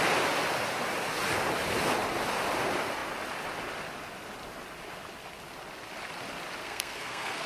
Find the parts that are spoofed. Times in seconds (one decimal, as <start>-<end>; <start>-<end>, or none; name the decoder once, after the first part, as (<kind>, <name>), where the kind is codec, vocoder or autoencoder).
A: 6.6-7.5 (codec, SNAC)